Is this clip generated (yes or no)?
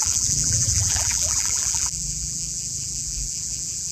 yes